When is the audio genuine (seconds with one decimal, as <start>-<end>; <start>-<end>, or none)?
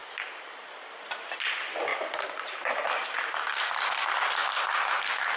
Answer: 1.0-1.9; 4.3-5.4